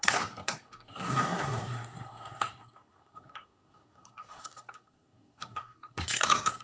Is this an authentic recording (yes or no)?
no